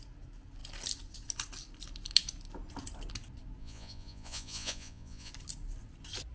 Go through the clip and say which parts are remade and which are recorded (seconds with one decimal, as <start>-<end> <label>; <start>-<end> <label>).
0.0-3.6 recorded; 3.6-5.3 remade; 5.3-6.3 recorded